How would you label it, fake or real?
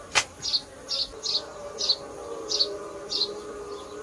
real